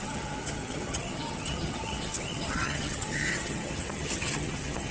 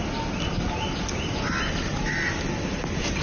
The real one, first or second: second